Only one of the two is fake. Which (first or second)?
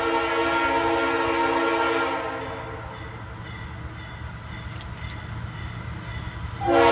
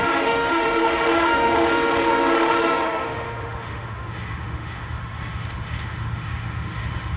second